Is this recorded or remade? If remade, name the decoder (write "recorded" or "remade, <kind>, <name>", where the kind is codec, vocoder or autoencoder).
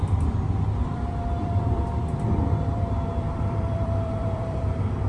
remade, vocoder, BigVGAN v2